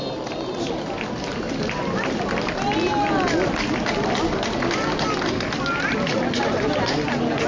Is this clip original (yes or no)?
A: yes